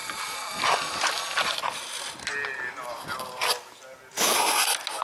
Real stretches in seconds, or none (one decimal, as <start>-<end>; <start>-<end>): 0.0-5.0